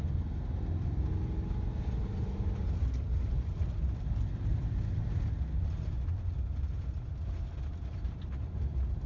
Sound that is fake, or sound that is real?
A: real